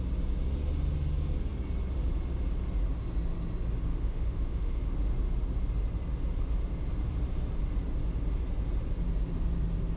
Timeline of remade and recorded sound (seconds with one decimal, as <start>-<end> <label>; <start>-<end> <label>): 0.0-3.9 recorded; 3.9-4.9 remade; 4.9-10.0 recorded